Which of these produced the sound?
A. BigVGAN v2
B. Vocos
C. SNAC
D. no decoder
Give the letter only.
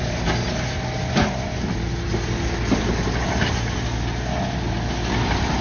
D